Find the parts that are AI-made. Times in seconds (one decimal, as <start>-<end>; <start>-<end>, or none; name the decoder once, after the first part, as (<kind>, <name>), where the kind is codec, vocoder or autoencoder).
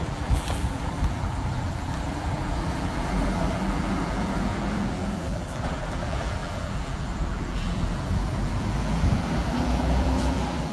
0.0-10.7 (vocoder, BigVGAN v2)